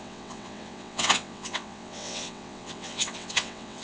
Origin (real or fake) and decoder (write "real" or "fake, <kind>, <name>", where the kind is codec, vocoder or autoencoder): fake, vocoder, WaveNeXt